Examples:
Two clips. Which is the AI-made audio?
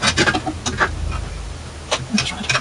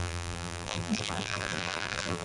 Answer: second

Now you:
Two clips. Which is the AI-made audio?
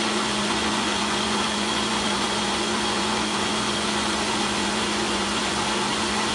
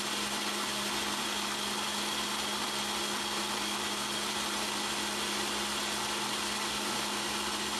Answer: first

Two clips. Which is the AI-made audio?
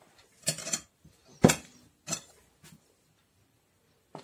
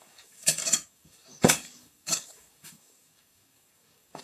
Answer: second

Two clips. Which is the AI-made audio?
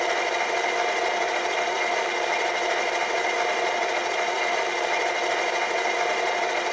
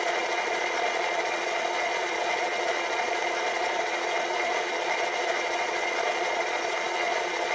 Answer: second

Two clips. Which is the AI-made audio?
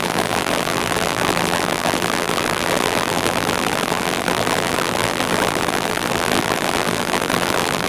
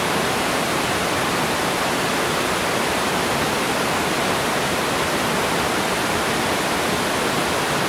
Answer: first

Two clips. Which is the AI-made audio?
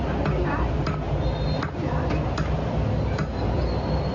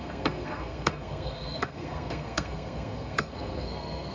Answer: second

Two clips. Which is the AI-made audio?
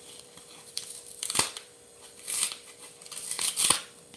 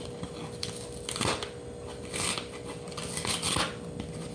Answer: first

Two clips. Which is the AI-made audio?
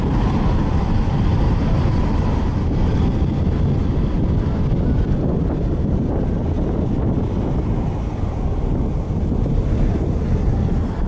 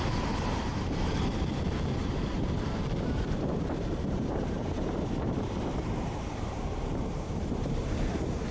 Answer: second